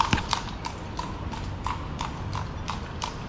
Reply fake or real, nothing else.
real